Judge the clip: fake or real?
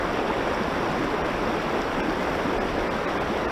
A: real